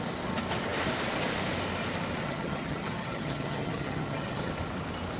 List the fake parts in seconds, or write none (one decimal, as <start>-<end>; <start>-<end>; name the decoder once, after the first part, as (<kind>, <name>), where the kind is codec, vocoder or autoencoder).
2.2-4.5 (vocoder, HiFi-GAN)

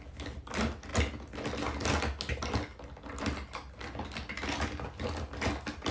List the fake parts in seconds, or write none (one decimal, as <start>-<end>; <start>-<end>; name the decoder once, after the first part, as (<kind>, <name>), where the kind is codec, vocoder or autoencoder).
none

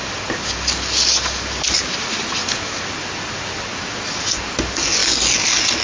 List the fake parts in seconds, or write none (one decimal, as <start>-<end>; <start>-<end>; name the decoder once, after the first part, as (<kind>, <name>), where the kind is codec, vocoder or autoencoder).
none

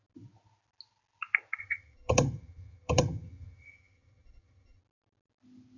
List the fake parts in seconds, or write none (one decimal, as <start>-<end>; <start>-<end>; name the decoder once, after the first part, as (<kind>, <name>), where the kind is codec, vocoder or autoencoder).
1.6-4.8 (vocoder, HiFi-GAN)